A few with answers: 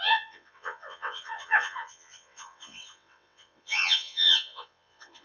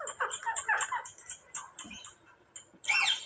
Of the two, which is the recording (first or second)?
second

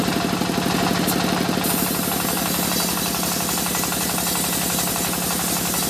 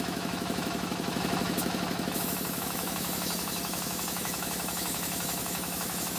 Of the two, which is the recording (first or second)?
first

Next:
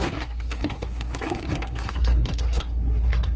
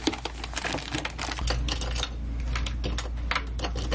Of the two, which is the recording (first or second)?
second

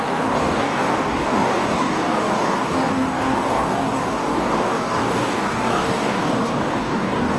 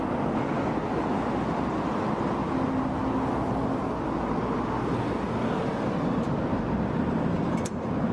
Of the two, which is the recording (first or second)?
second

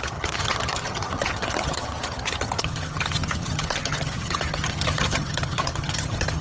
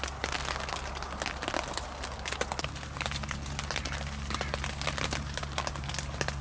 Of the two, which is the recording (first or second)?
second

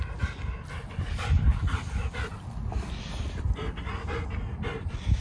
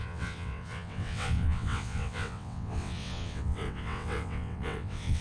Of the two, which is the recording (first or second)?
first